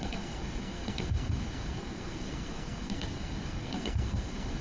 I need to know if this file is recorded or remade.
remade